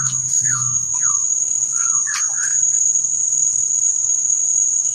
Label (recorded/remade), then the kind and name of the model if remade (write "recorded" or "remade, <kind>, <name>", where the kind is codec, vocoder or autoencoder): remade, codec, SNAC